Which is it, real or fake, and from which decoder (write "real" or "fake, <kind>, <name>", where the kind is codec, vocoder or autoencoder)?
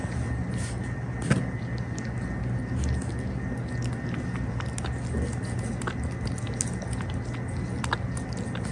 real